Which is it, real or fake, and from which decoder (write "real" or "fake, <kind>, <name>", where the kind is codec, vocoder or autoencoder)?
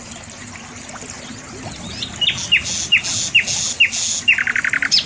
real